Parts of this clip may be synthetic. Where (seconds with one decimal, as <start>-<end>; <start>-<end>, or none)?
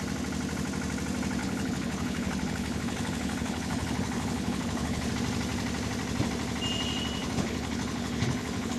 1.4-5.1; 7.2-8.8